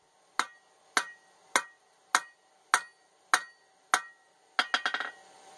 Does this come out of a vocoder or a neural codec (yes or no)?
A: no